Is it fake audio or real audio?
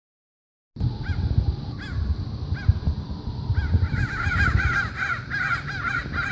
real